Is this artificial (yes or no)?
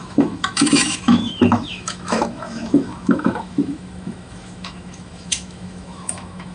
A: yes